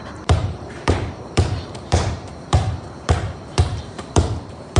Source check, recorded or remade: remade